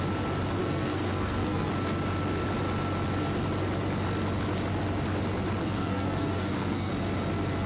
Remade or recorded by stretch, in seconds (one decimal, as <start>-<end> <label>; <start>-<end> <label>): 0.0-0.6 recorded; 0.6-1.7 remade; 1.7-5.6 recorded; 5.6-6.9 remade; 6.9-7.7 recorded